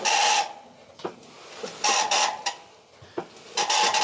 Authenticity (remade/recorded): recorded